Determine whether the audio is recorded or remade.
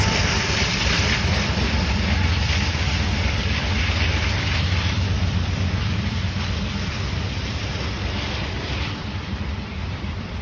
remade